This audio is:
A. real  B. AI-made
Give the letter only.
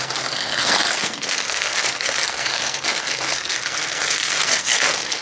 B